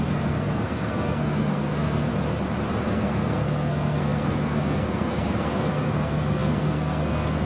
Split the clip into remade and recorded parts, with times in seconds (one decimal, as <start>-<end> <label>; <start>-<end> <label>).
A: 0.0-2.1 remade; 2.1-2.9 recorded; 2.9-7.5 remade

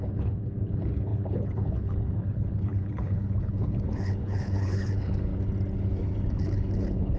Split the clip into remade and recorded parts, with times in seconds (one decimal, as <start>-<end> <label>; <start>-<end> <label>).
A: 0.0-5.3 remade; 5.3-6.3 recorded; 6.3-7.2 remade

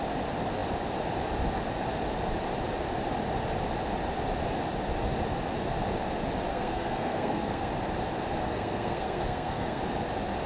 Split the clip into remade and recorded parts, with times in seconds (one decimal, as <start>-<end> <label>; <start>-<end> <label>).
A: 0.0-6.5 recorded; 6.5-7.7 remade; 7.7-8.4 recorded; 8.4-9.8 remade; 9.8-10.5 recorded

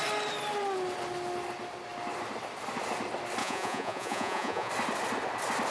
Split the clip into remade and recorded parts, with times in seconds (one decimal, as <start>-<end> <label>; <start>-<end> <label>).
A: 0.0-3.4 recorded; 3.4-4.7 remade; 4.7-5.7 recorded

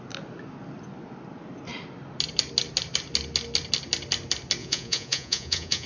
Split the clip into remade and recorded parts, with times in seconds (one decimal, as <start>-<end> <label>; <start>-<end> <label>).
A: 0.0-4.6 recorded; 4.6-5.9 remade

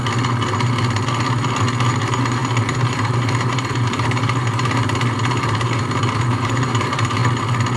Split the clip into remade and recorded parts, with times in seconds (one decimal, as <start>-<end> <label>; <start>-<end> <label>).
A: 0.0-1.9 recorded; 1.9-7.2 remade; 7.2-7.8 recorded

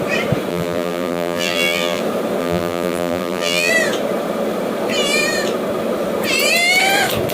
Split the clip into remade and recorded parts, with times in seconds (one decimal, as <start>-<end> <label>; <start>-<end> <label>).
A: 0.0-0.5 recorded; 0.5-2.0 remade; 2.0-2.4 recorded; 2.4-3.7 remade; 3.7-7.3 recorded